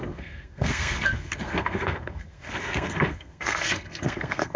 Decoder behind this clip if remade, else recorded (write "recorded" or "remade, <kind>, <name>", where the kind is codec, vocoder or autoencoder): remade, codec, SNAC